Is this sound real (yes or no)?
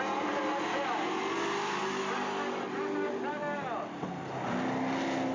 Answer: yes